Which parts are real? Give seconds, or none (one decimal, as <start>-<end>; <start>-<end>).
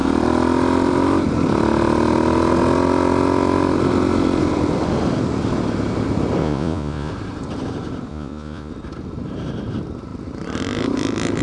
0.0-6.4; 7.1-8.1; 8.7-11.4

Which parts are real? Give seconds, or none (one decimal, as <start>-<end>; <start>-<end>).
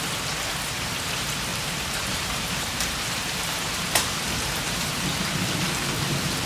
0.0-1.5; 5.0-6.5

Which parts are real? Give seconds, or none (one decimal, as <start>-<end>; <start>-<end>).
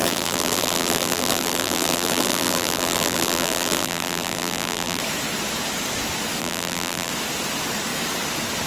5.0-6.4; 7.1-8.7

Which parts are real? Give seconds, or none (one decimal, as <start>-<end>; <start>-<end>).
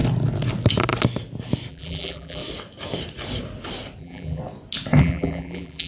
0.0-1.7; 2.4-4.0; 4.4-5.0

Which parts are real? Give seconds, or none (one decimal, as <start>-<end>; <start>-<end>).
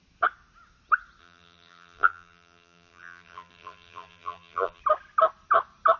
0.0-1.2; 4.8-6.0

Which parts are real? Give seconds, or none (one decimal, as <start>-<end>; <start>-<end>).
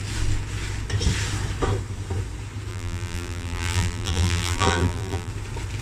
0.0-2.7; 5.3-5.8